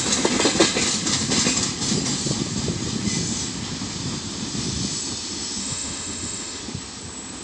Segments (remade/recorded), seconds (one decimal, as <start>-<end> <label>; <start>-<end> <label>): 0.0-5.6 recorded; 5.6-6.6 remade; 6.6-7.4 recorded

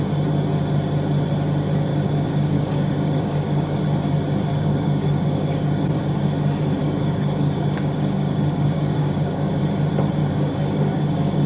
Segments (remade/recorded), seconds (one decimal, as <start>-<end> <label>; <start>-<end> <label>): 0.0-1.9 recorded; 1.9-3.8 remade; 3.8-4.5 recorded; 4.5-6.2 remade; 6.2-6.8 recorded; 6.8-9.6 remade; 9.6-10.2 recorded; 10.2-11.5 remade

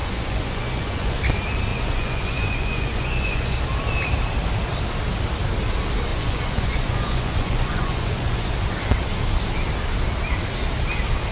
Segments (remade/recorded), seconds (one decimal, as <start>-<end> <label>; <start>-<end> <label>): 0.0-1.2 remade; 1.2-1.7 recorded; 1.7-3.6 remade; 3.6-6.1 recorded; 6.1-8.5 remade; 8.5-11.3 recorded

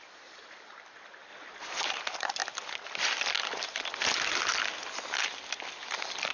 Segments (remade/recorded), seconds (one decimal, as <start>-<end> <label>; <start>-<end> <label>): 0.0-1.3 remade; 1.3-1.9 recorded; 1.9-2.4 remade; 2.4-6.3 recorded

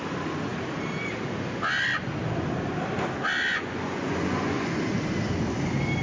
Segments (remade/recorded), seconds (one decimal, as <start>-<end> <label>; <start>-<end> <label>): 0.0-3.5 recorded; 3.5-4.8 remade; 4.8-6.0 recorded

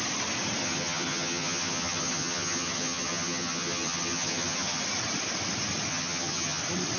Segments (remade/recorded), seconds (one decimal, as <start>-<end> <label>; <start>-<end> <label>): 0.0-0.6 recorded; 0.6-4.8 remade; 4.8-5.9 recorded; 5.9-6.6 remade; 6.6-7.0 recorded

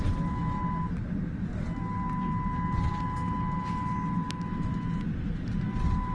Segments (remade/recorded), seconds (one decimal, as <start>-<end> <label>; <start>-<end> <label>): 0.0-6.1 recorded

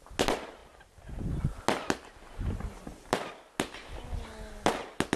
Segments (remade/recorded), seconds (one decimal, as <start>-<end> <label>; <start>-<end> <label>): 0.0-5.2 recorded